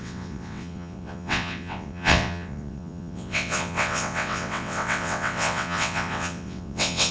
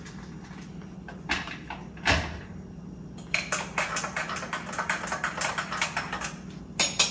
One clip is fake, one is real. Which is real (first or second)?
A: second